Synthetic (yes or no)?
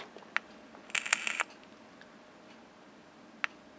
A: no